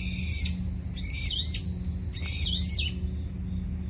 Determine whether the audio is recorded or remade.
recorded